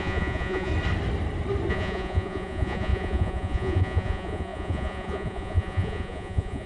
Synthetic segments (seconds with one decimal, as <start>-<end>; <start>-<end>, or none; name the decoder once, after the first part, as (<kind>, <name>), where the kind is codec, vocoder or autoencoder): 0.0-0.7 (vocoder, Vocos); 1.7-6.7